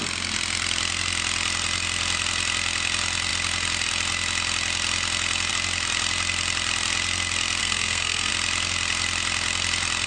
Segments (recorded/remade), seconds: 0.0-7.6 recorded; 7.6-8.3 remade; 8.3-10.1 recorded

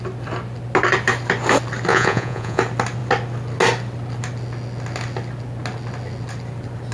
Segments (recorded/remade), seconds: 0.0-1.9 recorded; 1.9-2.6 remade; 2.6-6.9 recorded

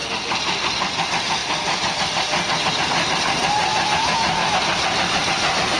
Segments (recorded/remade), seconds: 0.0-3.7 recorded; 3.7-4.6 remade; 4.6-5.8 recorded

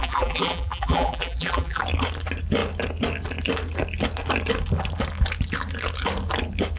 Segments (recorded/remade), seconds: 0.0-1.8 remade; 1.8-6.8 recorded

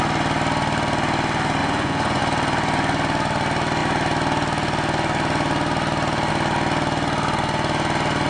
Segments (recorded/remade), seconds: 0.0-1.6 recorded; 1.6-2.2 remade; 2.2-8.3 recorded